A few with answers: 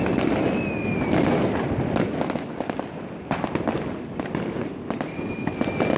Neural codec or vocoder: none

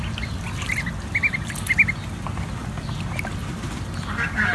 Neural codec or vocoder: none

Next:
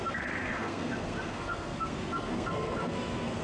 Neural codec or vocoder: codec, SNAC